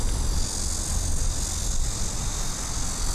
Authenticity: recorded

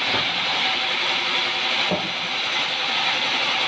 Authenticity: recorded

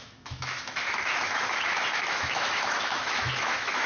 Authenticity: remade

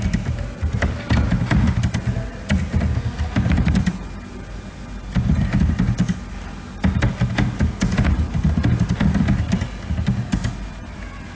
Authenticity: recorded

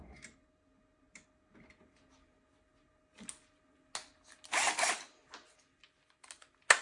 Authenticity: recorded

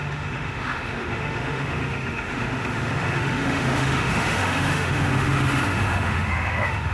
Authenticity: remade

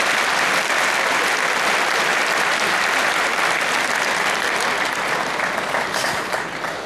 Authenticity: recorded